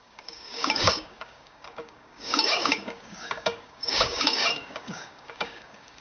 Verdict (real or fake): fake